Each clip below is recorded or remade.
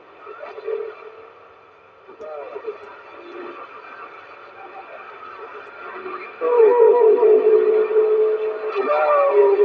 recorded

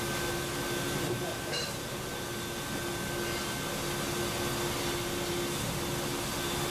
recorded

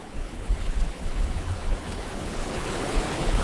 remade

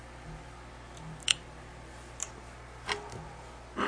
recorded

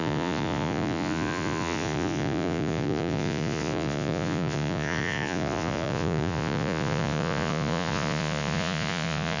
remade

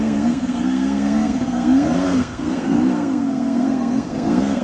remade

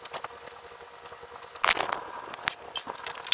recorded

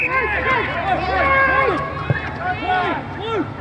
recorded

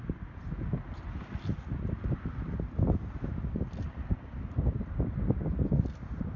recorded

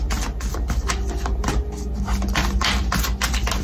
recorded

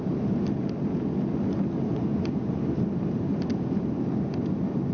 recorded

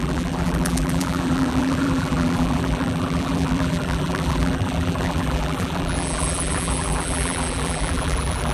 remade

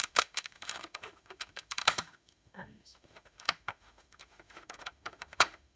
remade